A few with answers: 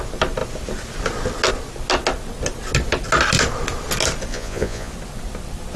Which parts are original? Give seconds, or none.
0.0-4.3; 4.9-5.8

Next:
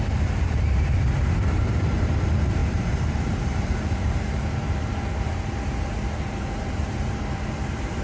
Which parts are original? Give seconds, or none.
none

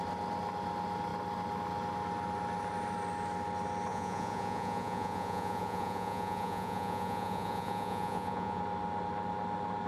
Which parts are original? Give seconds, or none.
0.0-3.9; 8.6-9.9